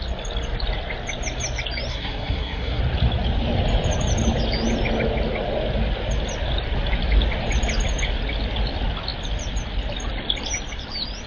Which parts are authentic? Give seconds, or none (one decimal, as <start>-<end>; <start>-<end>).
0.0-1.9; 2.8-11.3